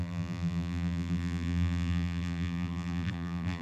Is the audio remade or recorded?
remade